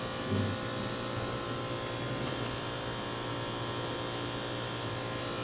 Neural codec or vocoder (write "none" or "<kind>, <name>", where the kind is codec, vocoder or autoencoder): none